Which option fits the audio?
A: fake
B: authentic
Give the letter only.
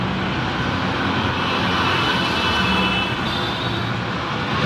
B